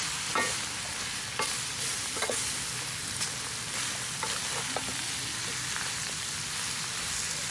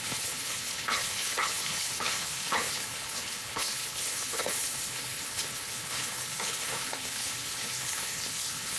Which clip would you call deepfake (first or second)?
second